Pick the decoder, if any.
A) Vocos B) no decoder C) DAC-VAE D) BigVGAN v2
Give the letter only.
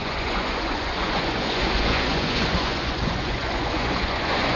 A